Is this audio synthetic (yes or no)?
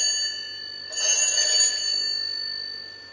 no